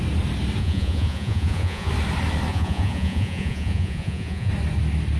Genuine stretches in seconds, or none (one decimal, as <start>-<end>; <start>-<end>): 0.0-0.6; 1.9-2.5; 4.5-5.2